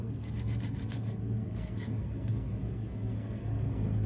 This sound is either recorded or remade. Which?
remade